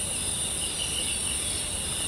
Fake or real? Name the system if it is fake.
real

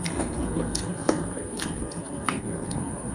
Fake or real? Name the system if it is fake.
fake, codec, SNAC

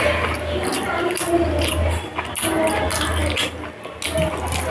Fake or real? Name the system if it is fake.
real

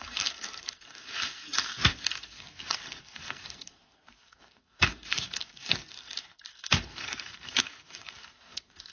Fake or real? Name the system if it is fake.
fake, codec, SNAC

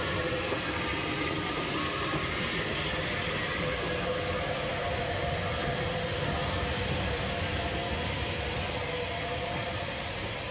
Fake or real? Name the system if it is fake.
real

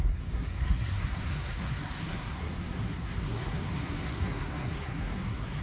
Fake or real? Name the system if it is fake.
fake, codec, SNAC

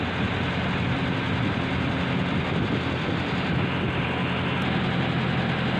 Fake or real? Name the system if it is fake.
real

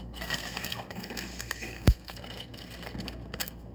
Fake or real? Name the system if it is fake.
fake, codec, SNAC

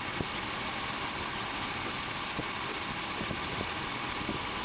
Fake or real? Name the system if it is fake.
real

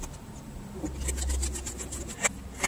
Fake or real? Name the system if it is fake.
real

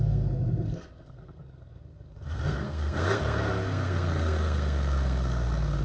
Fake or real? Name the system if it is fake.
fake, codec, SNAC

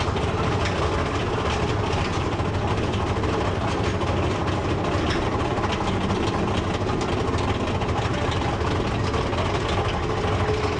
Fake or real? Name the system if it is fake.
real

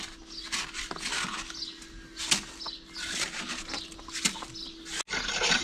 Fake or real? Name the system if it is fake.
real